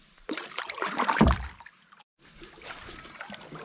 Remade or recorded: recorded